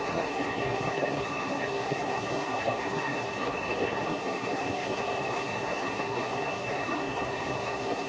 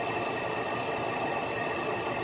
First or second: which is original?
second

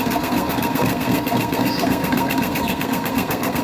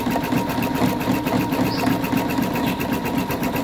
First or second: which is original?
second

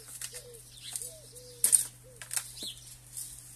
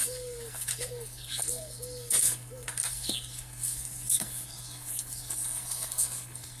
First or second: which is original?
first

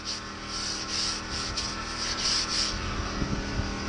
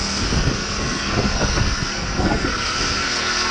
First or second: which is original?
first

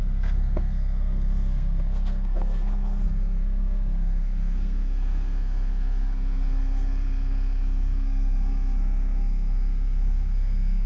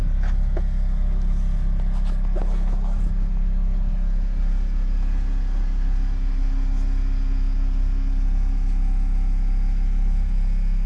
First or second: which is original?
second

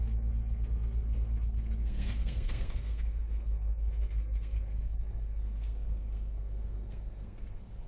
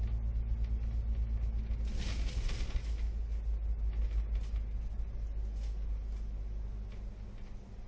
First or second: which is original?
second